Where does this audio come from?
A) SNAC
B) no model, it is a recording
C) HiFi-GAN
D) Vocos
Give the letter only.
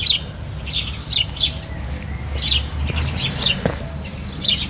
B